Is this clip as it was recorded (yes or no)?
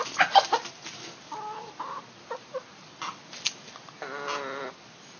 yes